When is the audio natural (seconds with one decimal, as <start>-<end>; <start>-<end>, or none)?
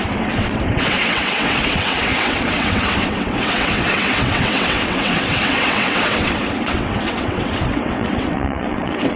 none